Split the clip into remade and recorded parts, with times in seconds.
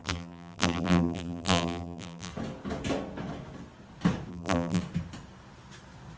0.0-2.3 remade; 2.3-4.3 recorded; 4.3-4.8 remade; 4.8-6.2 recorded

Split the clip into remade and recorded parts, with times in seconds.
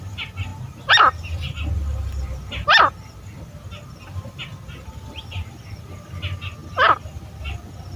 0.0-0.5 remade; 0.5-5.3 recorded; 5.3-8.0 remade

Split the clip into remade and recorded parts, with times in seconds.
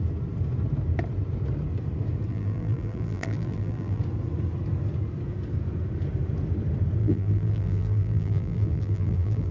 0.0-2.3 recorded; 2.3-4.0 remade; 4.0-7.0 recorded; 7.0-9.5 remade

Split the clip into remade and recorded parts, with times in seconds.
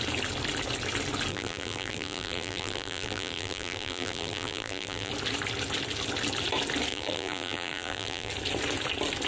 0.0-1.3 recorded; 1.3-5.1 remade; 5.1-6.9 recorded; 6.9-8.3 remade; 8.3-9.3 recorded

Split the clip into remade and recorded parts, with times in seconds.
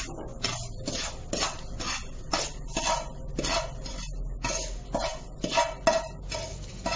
0.0-7.0 recorded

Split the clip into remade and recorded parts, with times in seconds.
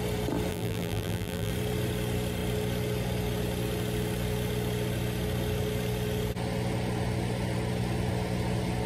0.0-0.5 recorded; 0.5-1.5 remade; 1.5-8.9 recorded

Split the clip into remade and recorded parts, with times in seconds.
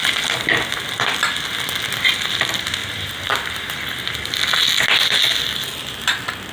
0.0-2.8 recorded; 2.8-3.7 remade; 3.7-6.5 recorded